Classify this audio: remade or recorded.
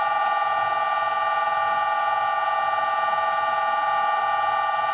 recorded